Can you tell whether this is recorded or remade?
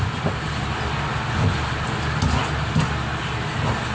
recorded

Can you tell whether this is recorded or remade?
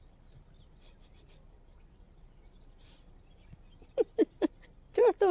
remade